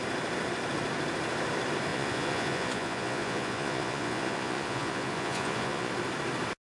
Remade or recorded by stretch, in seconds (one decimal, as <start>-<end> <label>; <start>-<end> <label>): 0.0-1.9 recorded; 1.9-5.9 remade; 5.9-6.7 recorded